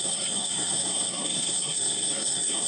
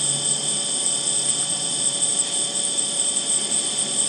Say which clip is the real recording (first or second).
second